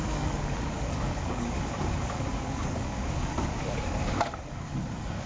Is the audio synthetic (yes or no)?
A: yes